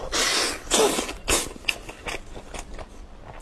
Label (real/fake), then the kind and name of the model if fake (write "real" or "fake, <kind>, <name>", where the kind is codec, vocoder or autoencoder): real